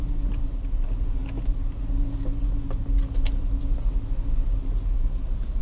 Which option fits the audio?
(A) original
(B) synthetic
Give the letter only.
A